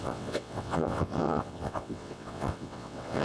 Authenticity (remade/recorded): remade